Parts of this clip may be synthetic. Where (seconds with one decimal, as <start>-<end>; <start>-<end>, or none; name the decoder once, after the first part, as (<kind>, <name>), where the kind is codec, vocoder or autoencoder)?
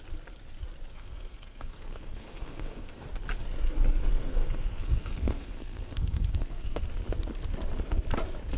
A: 0.9-3.0 (codec, SNAC); 4.0-6.8